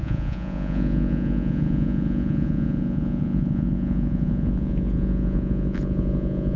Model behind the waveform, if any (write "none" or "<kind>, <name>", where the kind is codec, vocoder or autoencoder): vocoder, Vocos